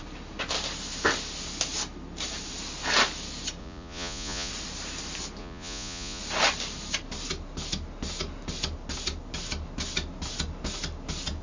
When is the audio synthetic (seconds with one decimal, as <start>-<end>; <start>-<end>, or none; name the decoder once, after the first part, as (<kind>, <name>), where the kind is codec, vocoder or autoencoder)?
3.6-4.5 (vocoder, Vocos); 5.4-6.2